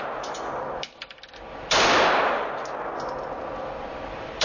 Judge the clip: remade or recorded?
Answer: recorded